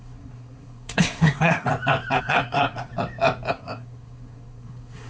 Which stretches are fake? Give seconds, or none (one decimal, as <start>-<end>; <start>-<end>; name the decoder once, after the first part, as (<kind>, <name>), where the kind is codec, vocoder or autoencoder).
0.0-1.7 (codec, SNAC); 2.2-2.9; 3.5-5.1

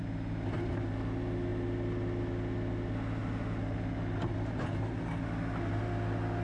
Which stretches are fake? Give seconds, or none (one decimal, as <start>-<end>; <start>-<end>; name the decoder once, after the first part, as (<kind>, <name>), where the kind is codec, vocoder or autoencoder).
none

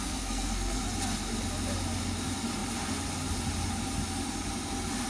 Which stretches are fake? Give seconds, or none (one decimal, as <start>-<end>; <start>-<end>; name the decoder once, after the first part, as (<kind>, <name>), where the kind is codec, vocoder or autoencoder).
0.0-0.8 (codec, SNAC)

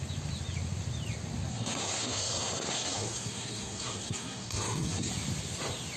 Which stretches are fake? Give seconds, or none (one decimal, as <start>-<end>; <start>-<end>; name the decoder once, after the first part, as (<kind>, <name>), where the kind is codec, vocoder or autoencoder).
1.5-5.1 (codec, SNAC)

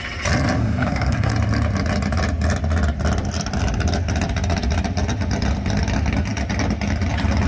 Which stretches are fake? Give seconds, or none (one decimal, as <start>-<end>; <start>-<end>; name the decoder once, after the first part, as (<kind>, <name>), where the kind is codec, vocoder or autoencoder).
0.6-1.3 (codec, SNAC)